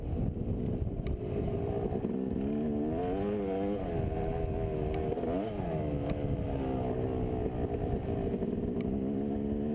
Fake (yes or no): no